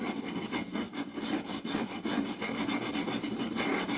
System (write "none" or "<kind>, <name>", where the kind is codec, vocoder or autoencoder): none